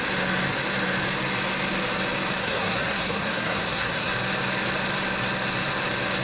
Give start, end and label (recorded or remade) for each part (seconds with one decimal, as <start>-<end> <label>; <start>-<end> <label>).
0.0-2.4 recorded; 2.4-4.1 remade; 4.1-6.2 recorded